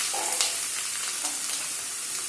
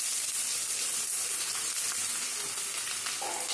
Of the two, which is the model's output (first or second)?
first